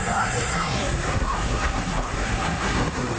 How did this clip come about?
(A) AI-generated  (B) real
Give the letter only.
A